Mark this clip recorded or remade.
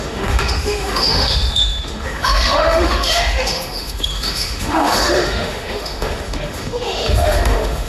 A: remade